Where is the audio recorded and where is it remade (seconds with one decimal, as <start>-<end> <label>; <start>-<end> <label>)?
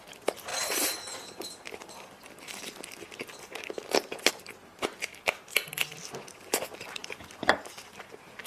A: 0.0-7.0 recorded; 7.0-8.5 remade